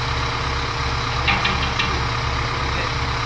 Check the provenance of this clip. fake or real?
real